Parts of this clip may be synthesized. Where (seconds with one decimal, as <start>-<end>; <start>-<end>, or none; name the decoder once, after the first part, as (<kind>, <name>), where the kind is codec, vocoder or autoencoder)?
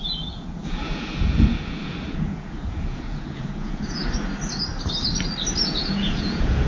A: 0.0-4.0 (vocoder, Vocos); 5.9-6.7